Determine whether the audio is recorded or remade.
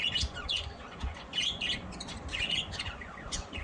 remade